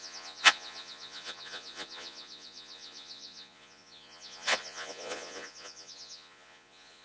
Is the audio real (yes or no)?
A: no